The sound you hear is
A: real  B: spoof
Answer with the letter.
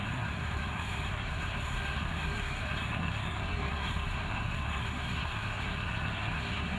B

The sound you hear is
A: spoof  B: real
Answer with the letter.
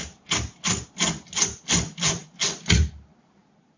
B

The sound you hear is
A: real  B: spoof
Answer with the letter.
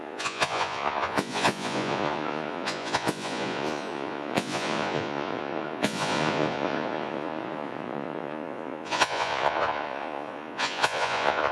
B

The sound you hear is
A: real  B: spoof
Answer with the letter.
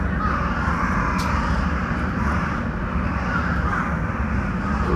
A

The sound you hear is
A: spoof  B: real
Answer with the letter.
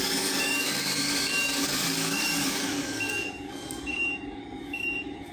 A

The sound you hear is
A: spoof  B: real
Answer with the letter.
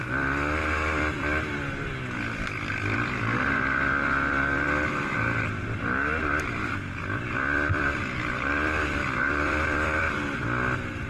A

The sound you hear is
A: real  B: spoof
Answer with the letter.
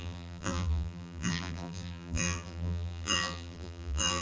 B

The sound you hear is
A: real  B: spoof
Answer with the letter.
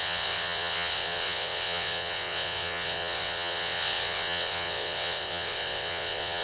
B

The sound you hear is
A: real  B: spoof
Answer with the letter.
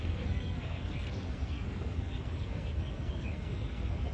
B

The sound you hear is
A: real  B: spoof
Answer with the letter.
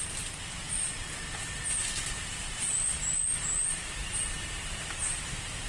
A